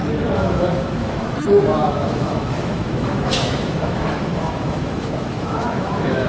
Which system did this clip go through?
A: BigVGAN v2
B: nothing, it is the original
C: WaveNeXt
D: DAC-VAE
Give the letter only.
D